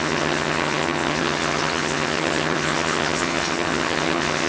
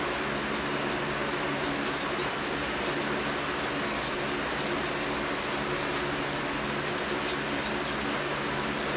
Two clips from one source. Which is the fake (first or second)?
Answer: first